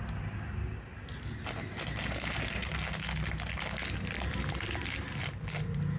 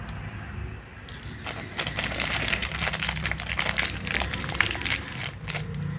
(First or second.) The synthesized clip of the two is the second